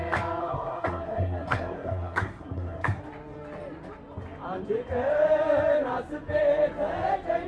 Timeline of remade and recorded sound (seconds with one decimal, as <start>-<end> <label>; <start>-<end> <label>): 0.0-0.4 recorded; 0.4-3.0 remade; 3.0-7.5 recorded